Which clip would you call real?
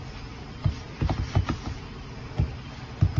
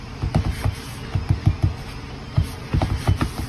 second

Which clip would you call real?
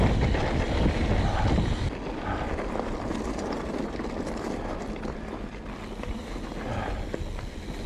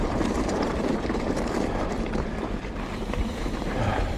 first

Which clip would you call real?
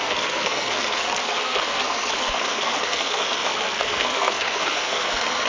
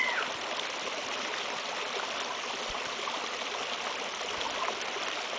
second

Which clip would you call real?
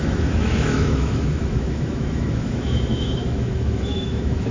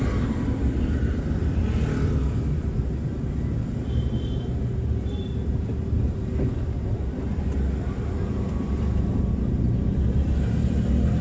second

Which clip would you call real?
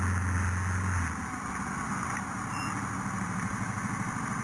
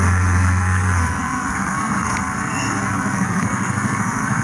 first